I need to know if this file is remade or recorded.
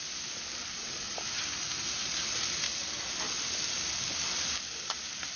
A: recorded